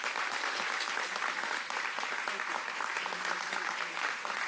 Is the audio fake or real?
real